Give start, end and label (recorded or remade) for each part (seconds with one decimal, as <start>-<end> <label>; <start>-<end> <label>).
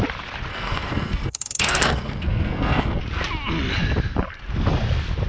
0.0-0.5 recorded; 0.5-3.0 remade; 3.0-5.3 recorded